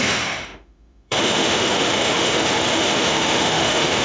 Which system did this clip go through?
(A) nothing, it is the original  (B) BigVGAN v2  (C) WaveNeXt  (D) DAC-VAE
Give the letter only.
D